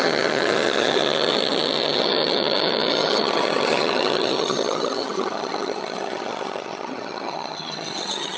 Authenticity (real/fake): fake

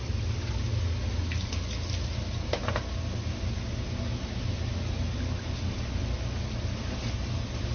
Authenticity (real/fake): real